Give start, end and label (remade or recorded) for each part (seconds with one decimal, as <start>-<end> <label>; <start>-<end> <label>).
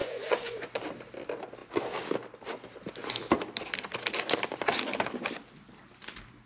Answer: 0.0-0.8 remade; 0.8-6.5 recorded